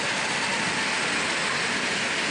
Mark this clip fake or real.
real